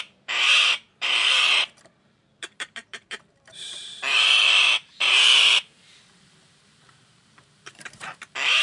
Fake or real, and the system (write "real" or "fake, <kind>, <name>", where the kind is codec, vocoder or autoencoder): fake, vocoder, BigVGAN v2